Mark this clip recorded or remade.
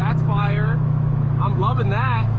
remade